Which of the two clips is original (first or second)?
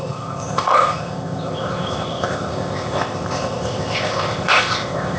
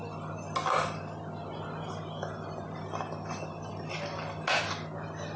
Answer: second